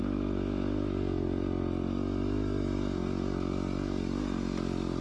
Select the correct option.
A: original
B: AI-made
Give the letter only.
A